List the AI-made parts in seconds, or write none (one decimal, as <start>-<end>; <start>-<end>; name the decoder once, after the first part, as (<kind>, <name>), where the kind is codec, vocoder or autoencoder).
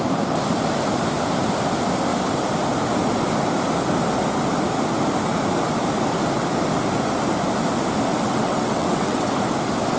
8.1-9.3 (vocoder, WaveNeXt)